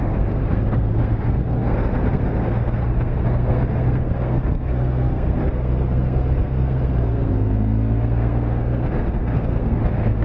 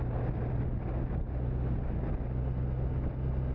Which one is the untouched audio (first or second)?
second